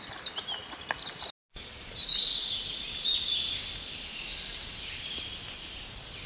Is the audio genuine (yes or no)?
yes